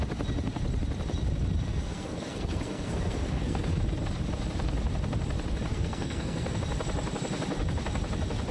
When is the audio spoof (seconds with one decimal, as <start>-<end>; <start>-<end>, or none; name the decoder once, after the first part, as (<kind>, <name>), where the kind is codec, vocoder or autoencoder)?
1.7-3.8 (codec, SNAC); 5.7-6.6